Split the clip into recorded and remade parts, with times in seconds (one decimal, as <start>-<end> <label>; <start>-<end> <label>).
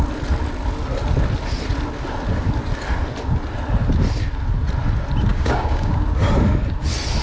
0.0-5.3 recorded; 5.3-5.9 remade; 5.9-7.2 recorded